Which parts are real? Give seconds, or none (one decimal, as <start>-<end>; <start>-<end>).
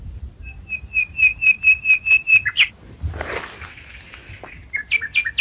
0.0-5.4